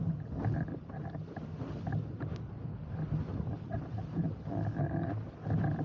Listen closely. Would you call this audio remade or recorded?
recorded